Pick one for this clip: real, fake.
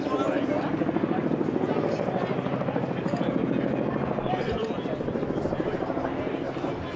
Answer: real